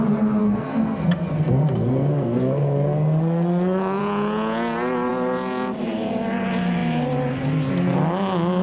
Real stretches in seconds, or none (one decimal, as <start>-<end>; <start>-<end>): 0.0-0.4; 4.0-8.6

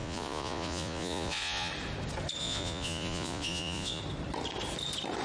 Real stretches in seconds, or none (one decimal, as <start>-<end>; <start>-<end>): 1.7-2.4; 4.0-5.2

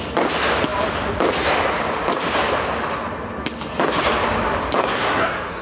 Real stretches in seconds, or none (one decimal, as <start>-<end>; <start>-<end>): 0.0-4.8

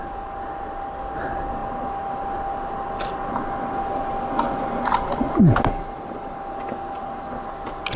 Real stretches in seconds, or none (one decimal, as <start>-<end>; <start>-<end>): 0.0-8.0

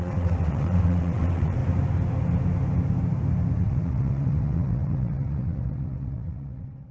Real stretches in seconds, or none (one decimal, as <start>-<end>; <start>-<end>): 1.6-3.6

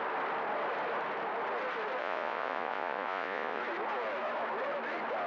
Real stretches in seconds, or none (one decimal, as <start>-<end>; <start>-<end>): 0.0-2.0; 3.6-5.3

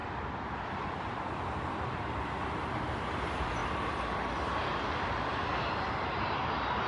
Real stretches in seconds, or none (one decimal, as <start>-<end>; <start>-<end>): 0.0-6.9